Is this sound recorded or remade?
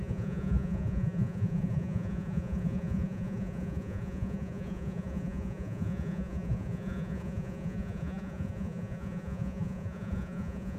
remade